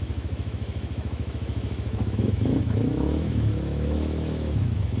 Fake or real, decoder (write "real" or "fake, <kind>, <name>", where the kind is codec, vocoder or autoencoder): fake, autoencoder, DAC-VAE